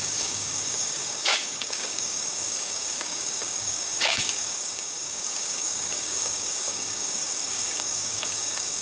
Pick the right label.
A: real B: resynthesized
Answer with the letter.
B